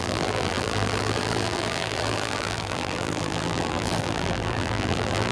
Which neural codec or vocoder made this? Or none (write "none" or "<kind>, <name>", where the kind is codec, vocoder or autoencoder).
vocoder, BigVGAN v2